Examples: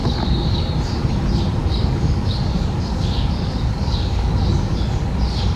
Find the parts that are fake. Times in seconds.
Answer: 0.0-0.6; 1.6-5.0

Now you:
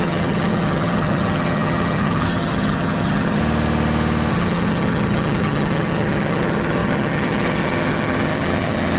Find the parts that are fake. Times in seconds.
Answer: 0.0-3.4; 4.3-9.0